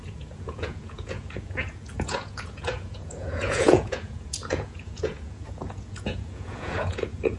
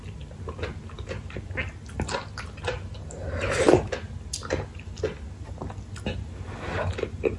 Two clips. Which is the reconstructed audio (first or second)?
first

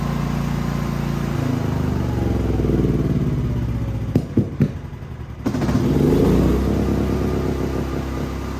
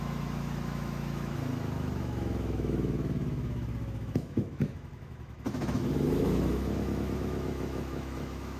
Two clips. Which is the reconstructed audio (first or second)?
second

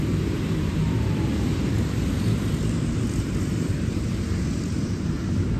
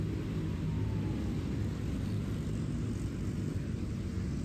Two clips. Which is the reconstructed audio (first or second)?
first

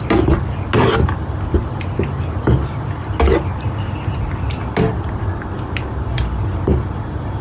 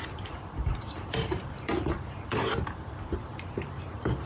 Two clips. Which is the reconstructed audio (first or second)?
second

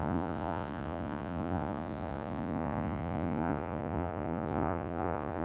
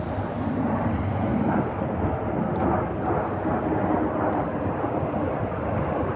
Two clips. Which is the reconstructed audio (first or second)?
first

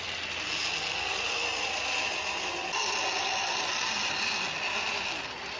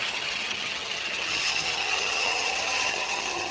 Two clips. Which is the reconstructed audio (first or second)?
second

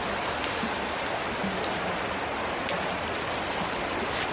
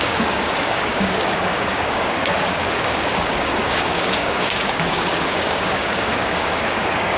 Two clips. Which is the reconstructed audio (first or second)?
second